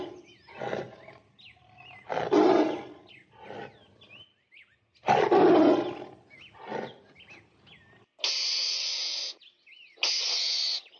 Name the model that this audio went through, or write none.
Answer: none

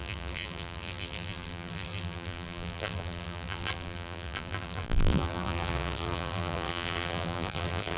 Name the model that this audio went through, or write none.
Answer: vocoder, BigVGAN v2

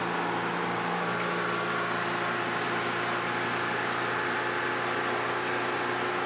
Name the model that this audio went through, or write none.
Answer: none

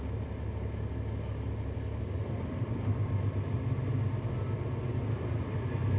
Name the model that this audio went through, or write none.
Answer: none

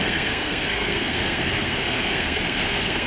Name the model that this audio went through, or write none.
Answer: codec, SNAC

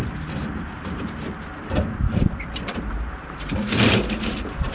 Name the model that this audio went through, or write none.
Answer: vocoder, BigVGAN v2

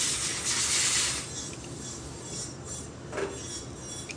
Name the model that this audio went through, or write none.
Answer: none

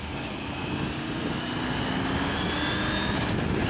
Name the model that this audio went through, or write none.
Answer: none